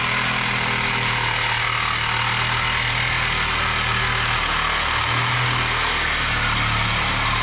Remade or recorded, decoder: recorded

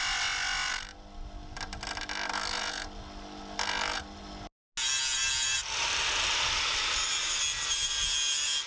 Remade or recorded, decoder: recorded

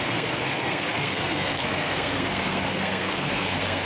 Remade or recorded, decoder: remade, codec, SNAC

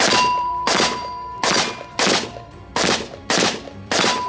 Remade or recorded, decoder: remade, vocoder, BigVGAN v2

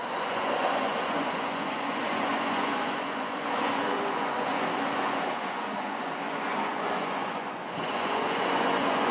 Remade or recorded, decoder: remade, vocoder, Vocos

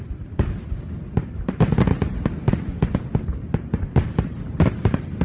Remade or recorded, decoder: remade, vocoder, BigVGAN v2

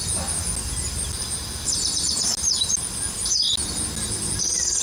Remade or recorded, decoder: recorded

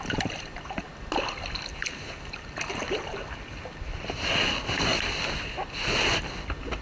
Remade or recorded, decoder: recorded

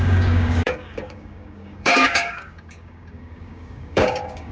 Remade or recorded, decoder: remade, codec, DAC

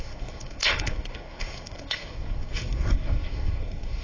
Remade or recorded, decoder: remade, codec, SNAC